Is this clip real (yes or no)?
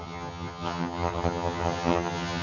no